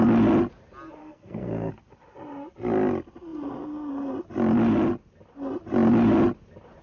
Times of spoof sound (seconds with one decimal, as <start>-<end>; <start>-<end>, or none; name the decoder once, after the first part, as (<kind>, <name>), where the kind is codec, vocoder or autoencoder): 1.0-1.7 (codec, SNAC)